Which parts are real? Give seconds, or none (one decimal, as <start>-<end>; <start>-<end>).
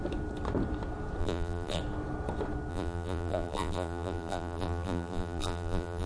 0.0-1.2; 1.8-2.7